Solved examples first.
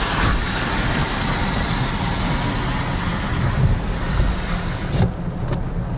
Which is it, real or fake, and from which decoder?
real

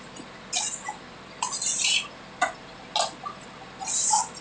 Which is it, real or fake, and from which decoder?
real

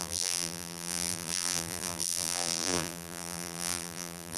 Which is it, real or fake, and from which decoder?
fake, vocoder, BigVGAN v2